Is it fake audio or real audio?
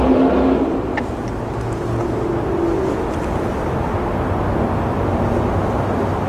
real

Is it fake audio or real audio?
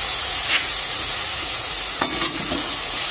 fake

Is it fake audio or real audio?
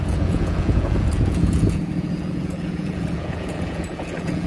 fake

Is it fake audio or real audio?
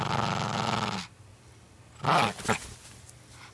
real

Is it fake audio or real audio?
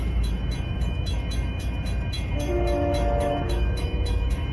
fake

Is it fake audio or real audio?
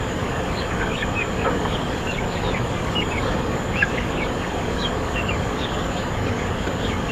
fake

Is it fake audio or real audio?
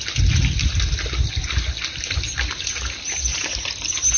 real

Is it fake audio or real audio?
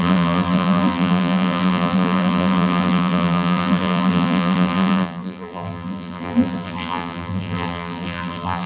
fake